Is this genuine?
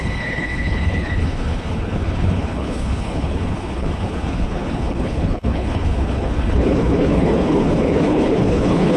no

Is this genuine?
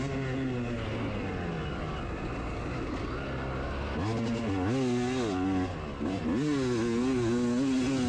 yes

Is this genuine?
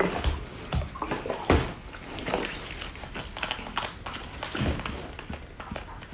yes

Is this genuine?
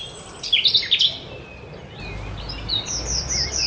yes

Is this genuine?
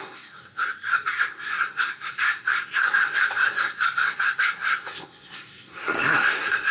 no